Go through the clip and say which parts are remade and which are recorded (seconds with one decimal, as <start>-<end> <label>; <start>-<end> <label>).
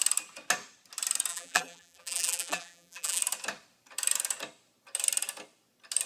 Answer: 0.0-1.3 recorded; 1.3-3.2 remade; 3.2-6.1 recorded